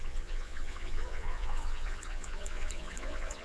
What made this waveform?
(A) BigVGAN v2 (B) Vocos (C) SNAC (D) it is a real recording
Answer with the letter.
B